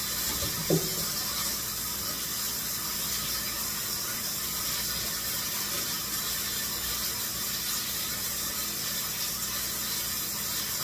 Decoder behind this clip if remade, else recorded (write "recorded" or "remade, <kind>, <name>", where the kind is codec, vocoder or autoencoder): recorded